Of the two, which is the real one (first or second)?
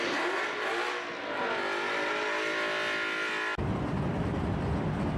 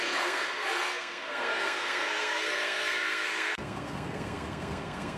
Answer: first